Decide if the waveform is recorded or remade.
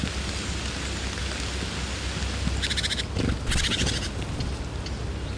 recorded